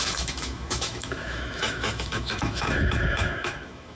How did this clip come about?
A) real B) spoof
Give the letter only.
B